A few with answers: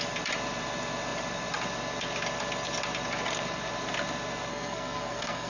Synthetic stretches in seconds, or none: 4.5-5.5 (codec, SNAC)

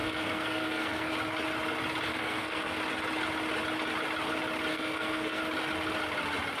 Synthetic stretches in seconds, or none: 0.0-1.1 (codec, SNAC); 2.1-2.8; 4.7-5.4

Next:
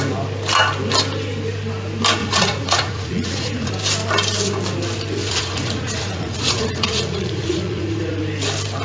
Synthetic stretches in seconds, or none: 2.2-3.7 (vocoder, Vocos); 5.2-8.2

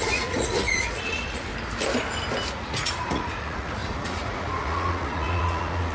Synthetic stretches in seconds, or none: 0.0-1.5 (vocoder, Vocos); 2.5-5.9